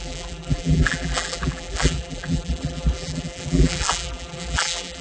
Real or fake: fake